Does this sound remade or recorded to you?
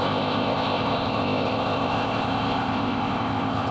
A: remade